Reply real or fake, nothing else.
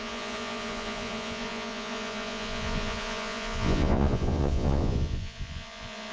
fake